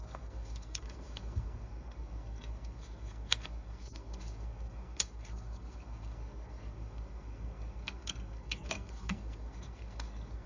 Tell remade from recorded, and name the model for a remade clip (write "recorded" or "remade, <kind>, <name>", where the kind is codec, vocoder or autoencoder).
remade, codec, SNAC